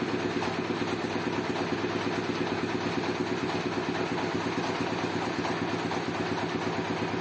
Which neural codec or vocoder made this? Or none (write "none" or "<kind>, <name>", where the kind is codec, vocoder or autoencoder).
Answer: none